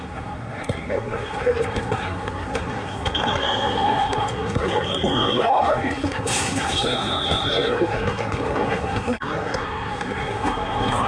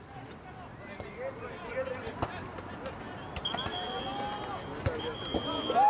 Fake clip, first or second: first